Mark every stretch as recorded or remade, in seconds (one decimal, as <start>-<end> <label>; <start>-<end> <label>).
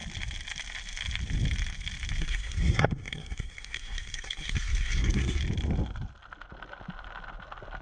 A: 0.0-2.2 recorded; 2.2-5.4 remade; 5.4-7.8 recorded